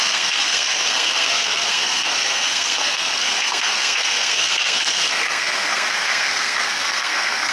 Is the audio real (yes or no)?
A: no